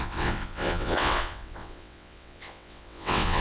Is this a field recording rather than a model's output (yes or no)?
no